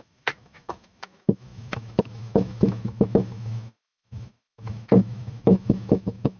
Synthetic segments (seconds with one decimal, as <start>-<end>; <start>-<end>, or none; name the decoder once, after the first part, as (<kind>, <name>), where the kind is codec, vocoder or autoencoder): 0.0-6.4 (autoencoder, DAC-VAE)